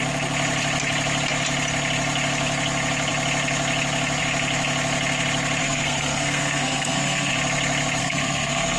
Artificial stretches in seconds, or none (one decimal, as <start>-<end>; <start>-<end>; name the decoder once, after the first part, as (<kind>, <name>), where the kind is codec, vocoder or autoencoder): 5.6-7.3 (codec, SNAC); 8.0-8.8